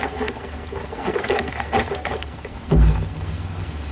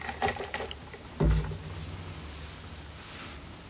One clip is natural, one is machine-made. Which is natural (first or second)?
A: second